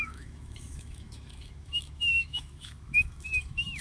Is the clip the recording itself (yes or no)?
no